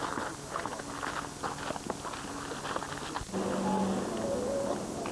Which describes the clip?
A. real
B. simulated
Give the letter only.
A